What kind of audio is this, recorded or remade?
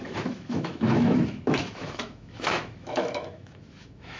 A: remade